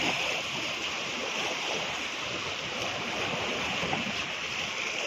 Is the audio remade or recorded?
remade